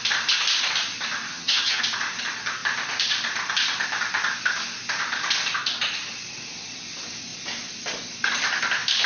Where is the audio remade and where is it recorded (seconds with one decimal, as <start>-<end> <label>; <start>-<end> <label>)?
0.0-1.3 recorded; 1.3-1.8 remade; 1.8-9.1 recorded